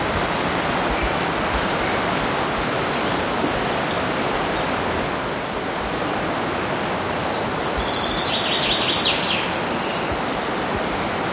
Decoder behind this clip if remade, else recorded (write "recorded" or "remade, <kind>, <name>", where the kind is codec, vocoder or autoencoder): recorded